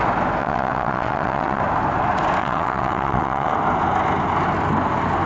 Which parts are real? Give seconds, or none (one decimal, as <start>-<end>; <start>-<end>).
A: 0.0-0.4; 1.6-2.4; 3.5-5.3